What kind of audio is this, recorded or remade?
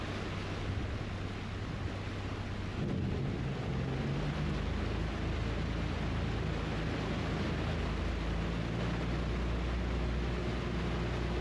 recorded